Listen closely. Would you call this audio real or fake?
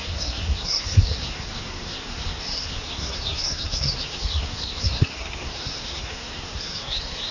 fake